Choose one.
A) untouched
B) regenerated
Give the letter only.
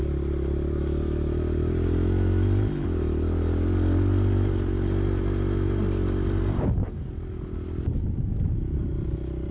A